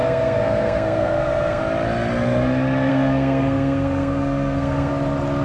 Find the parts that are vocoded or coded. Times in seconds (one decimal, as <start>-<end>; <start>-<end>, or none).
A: 0.0-1.6; 2.9-4.9